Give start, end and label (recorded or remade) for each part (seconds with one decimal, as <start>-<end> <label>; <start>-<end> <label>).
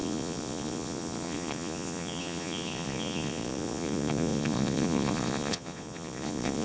0.0-6.6 remade